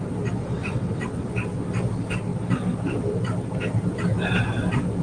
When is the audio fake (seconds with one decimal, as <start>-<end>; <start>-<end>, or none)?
0.5-1.3